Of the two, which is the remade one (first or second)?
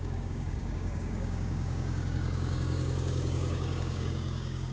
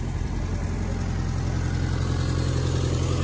first